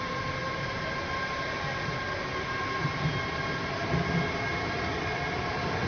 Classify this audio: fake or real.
real